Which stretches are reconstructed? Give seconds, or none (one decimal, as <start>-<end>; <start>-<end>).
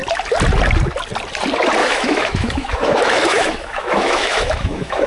1.8-5.1